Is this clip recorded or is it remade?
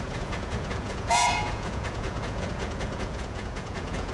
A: remade